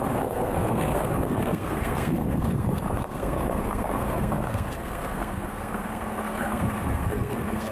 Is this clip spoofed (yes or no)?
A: yes